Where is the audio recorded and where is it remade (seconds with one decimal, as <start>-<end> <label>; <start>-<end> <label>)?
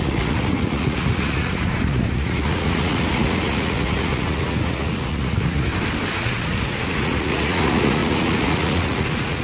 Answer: 0.0-5.7 remade; 5.7-6.2 recorded; 6.2-9.4 remade